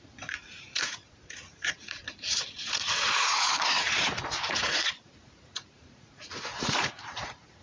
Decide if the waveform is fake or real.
fake